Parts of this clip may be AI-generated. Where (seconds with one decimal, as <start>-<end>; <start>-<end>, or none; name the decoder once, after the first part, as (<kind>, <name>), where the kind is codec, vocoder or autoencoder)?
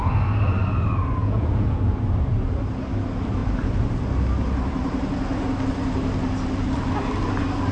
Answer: 1.2-1.8 (vocoder, Vocos)